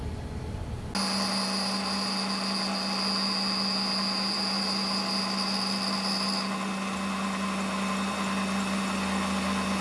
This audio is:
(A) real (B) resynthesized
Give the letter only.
A